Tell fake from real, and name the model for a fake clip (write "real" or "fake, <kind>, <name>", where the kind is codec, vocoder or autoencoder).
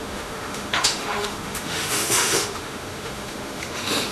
fake, autoencoder, DAC-VAE